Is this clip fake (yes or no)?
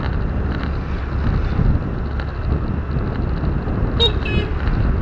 no